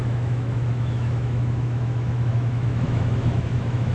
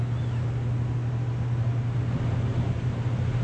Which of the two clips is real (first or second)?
second